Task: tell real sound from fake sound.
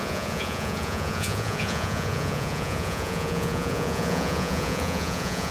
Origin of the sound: fake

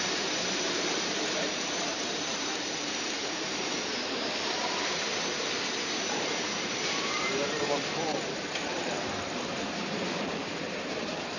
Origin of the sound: fake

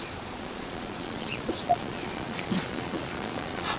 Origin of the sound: fake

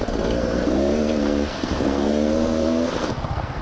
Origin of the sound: fake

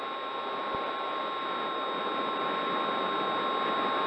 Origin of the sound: real